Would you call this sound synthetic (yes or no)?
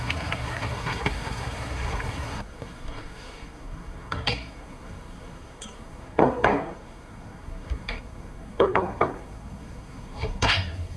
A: yes